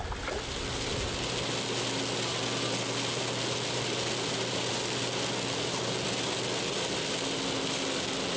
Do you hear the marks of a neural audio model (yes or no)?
no